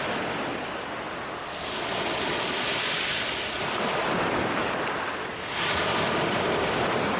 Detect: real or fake real